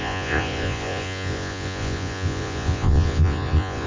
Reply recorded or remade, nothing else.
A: remade